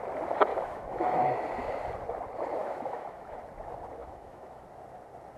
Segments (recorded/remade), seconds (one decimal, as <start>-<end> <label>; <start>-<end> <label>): 0.0-0.5 recorded; 0.5-1.2 remade; 1.2-2.6 recorded; 2.6-3.4 remade; 3.4-4.0 recorded; 4.0-4.6 remade; 4.6-5.4 recorded